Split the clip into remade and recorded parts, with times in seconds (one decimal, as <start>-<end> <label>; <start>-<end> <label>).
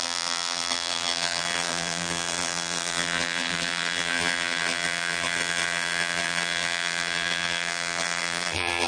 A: 0.0-8.9 remade